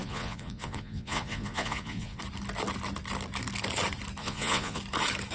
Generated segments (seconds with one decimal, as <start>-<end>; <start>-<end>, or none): 0.0-2.2; 4.2-4.8